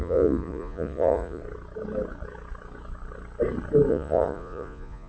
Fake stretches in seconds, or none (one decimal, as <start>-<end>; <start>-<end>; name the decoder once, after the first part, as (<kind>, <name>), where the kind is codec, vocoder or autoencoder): 0.0-1.4 (vocoder, Vocos); 3.9-5.1